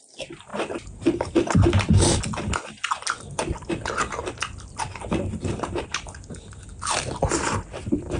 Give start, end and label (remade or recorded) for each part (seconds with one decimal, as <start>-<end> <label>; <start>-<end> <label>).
0.0-8.2 recorded